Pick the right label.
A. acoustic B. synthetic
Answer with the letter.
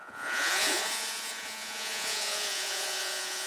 B